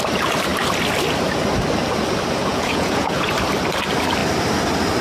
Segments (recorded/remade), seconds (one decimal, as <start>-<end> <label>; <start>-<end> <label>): 0.0-2.5 recorded; 2.5-3.3 remade; 3.3-5.0 recorded